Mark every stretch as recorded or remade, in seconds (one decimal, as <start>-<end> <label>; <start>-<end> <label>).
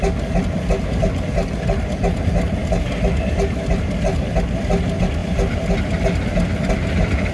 0.0-7.3 recorded